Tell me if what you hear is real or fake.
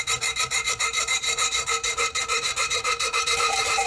fake